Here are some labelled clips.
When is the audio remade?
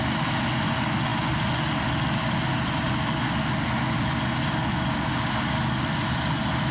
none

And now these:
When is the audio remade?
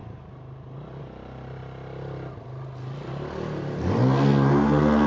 none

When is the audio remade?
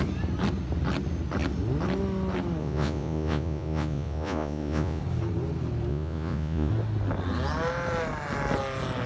2.6-5.0 (vocoder, Vocos); 5.9-6.7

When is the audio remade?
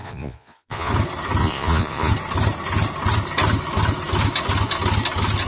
0.0-0.9 (vocoder, Vocos); 1.4-2.1